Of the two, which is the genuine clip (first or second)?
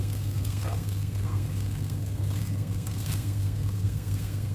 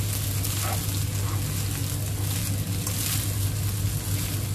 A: second